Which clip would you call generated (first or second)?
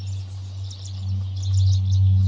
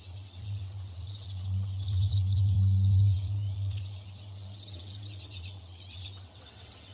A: second